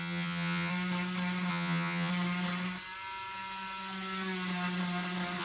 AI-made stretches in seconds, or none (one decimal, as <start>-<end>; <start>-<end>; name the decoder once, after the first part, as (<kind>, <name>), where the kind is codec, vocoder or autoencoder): 0.0-0.7 (vocoder, HiFi-GAN); 1.5-2.1